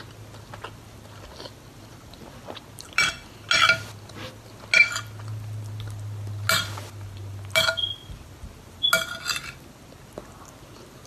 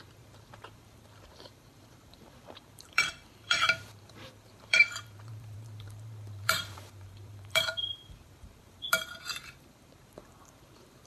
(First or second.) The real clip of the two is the first